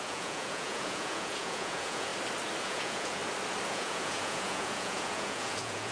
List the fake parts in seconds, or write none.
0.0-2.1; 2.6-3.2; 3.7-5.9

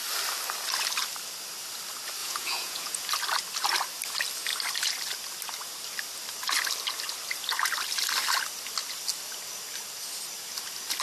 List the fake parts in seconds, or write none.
2.2-3.1

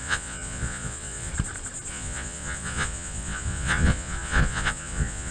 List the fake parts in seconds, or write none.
0.0-1.3; 1.9-5.3

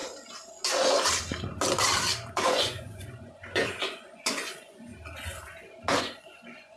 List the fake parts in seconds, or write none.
2.3-4.9; 6.0-6.8